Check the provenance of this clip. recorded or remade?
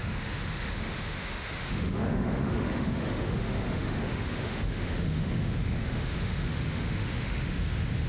remade